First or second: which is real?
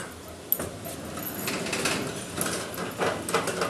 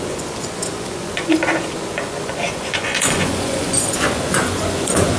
first